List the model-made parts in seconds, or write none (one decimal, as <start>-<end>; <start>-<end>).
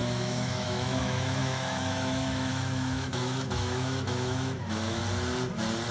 0.0-5.0